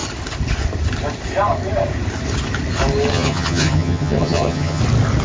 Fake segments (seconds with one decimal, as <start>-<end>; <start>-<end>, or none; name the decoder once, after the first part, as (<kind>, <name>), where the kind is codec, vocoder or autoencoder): 3.1-4.8 (vocoder, HiFi-GAN)